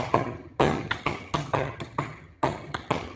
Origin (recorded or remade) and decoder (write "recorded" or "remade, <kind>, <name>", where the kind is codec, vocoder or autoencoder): remade, vocoder, HiFi-GAN